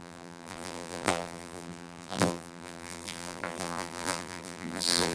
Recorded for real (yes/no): no